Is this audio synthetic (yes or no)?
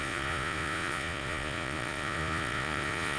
yes